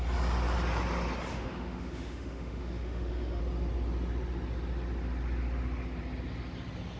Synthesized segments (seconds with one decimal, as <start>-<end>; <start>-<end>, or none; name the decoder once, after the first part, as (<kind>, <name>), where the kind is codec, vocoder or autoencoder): 1.3-3.4 (autoencoder, DAC-VAE)

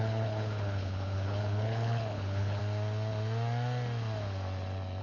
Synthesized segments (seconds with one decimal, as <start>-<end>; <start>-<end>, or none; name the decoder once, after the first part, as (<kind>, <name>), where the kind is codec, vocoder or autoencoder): 0.0-2.6 (codec, HILCodec)

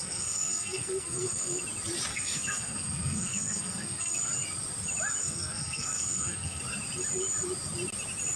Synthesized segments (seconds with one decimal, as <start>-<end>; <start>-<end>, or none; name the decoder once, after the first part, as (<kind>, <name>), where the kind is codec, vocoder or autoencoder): 0.0-1.6 (codec, SNAC); 2.1-4.2; 5.2-6.6

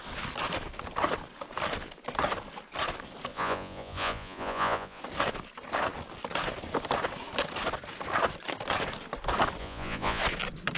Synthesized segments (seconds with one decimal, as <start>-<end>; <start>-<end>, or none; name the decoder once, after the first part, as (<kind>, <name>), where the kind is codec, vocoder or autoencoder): 3.3-5.0 (vocoder, Vocos); 9.6-10.2

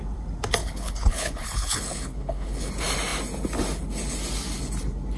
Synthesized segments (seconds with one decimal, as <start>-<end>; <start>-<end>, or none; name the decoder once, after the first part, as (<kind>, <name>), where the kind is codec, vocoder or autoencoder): 0.6-2.7 (codec, HILCodec)

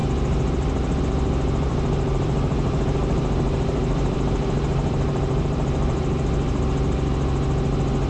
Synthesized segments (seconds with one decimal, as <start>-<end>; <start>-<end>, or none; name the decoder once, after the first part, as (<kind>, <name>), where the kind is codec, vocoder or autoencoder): 0.0-1.0 (vocoder, BigVGAN v2); 1.7-6.6